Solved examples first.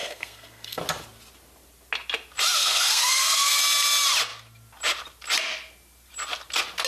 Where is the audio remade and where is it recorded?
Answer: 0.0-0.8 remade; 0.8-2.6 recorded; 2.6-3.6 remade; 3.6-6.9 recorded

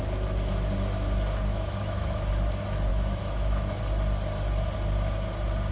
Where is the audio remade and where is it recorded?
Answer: 0.0-1.5 recorded; 1.5-2.3 remade; 2.3-2.9 recorded; 2.9-3.8 remade; 3.8-5.7 recorded

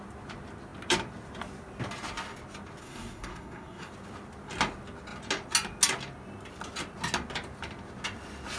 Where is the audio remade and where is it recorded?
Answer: 0.0-2.8 recorded; 2.8-3.9 remade; 3.9-8.6 recorded

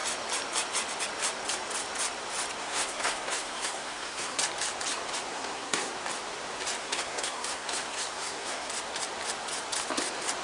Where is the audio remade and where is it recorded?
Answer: 0.0-2.6 recorded; 2.6-4.4 remade; 4.4-5.3 recorded; 5.3-5.9 remade; 5.9-6.8 recorded; 6.8-8.7 remade; 8.7-10.4 recorded

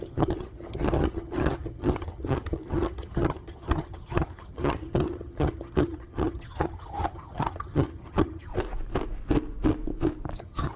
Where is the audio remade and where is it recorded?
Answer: 0.0-8.5 remade; 8.5-10.4 recorded; 10.4-10.8 remade